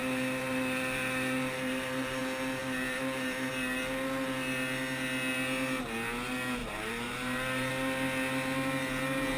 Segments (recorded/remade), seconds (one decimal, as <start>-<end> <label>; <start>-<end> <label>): 0.0-2.2 remade; 2.2-2.6 recorded; 2.6-3.5 remade; 3.5-6.6 recorded; 6.6-7.7 remade; 7.7-9.4 recorded